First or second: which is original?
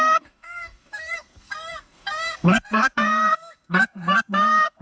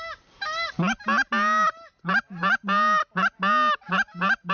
second